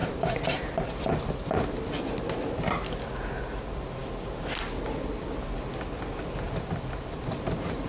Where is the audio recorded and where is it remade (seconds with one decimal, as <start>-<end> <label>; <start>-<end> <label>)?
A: 0.0-7.9 recorded